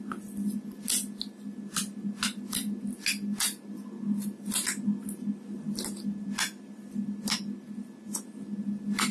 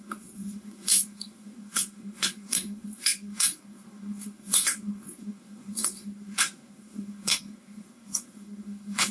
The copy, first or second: second